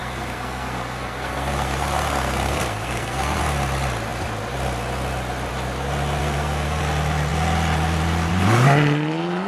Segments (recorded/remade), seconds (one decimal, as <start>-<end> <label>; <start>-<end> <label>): 0.0-3.4 remade; 3.4-6.2 recorded; 6.2-6.8 remade; 6.8-9.5 recorded